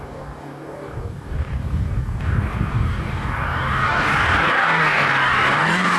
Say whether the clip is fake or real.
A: fake